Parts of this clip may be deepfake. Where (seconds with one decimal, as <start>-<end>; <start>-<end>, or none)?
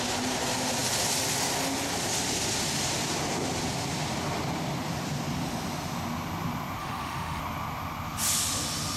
6.8-7.4